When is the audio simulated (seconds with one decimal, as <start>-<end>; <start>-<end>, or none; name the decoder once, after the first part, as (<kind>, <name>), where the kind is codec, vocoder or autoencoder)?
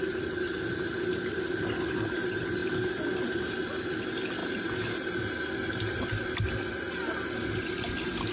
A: none